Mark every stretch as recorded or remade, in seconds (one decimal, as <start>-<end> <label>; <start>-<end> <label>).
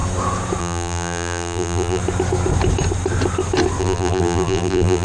0.0-0.6 recorded; 0.6-2.0 remade; 2.0-3.8 recorded; 3.8-5.0 remade